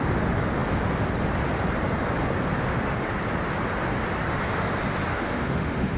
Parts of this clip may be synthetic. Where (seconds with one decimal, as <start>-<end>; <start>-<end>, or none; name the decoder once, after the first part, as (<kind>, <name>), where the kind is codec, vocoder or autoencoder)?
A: 5.1-6.0 (autoencoder, DAC-VAE)